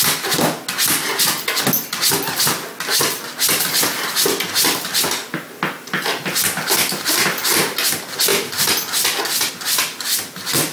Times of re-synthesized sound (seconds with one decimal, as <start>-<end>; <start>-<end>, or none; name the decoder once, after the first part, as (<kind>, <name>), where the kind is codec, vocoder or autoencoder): none